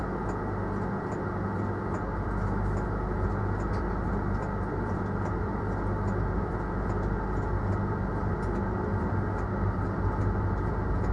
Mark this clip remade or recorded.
recorded